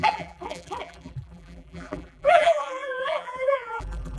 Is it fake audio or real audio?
fake